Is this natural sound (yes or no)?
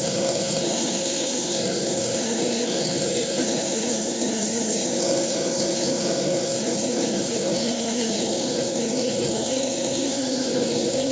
no